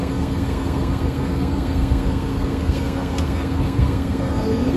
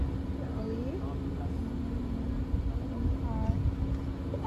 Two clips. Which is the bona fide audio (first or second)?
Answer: second